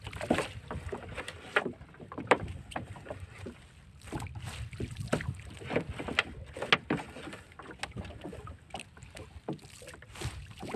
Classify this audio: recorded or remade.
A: recorded